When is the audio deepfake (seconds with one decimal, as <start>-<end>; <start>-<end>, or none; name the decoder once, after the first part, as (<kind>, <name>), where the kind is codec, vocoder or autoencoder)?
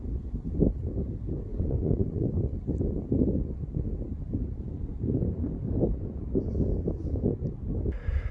1.5-2.3 (vocoder, Vocos)